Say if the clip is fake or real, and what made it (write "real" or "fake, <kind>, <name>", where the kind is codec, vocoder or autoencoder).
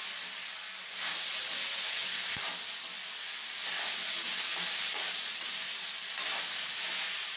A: real